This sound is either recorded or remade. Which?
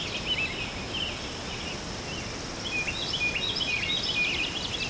recorded